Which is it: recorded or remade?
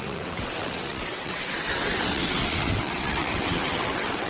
remade